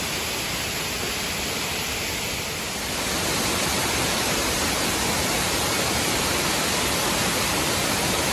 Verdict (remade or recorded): recorded